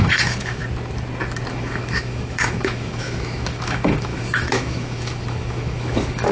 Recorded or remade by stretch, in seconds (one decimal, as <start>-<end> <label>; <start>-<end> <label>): 0.0-0.6 remade; 0.6-1.5 recorded; 1.5-6.3 remade